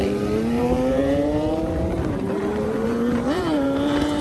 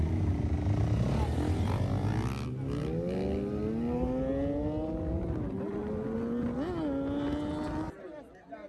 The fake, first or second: first